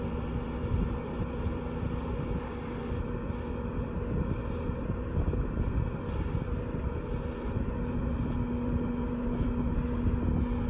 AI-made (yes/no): no